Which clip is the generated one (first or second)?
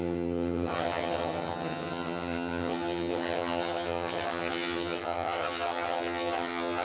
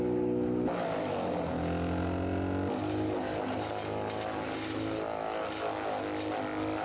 first